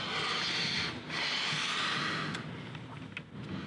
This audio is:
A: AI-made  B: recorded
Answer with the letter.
B